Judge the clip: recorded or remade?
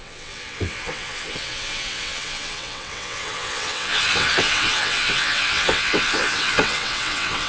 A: remade